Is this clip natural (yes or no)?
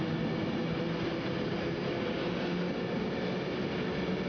yes